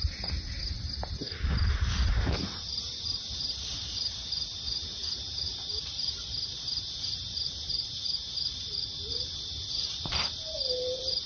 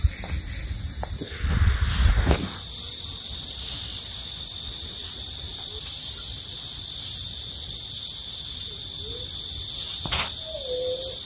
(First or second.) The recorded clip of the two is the second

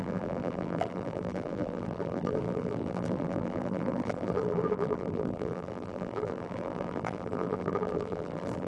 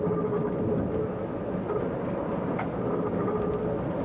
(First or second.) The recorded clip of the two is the second